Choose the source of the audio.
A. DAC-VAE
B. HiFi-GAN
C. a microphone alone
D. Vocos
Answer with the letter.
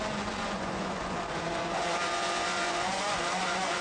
D